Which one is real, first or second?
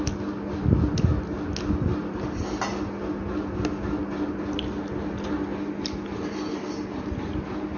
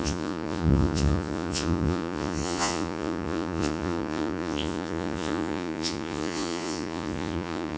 first